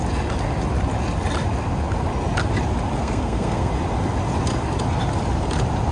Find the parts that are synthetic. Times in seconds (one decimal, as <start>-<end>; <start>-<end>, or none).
3.0-3.7